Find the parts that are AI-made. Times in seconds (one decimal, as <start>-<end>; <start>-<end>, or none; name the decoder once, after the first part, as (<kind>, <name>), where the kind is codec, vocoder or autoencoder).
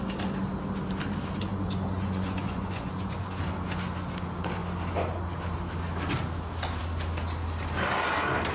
1.5-3.4 (vocoder, Vocos)